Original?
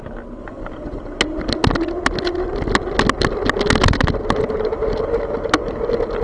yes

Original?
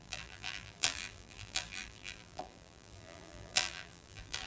no